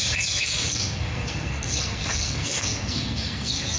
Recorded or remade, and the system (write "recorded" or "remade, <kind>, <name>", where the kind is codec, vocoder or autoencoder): remade, codec, SNAC